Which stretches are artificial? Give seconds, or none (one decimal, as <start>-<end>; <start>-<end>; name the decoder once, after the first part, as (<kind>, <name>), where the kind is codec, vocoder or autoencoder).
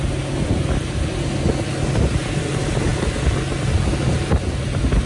none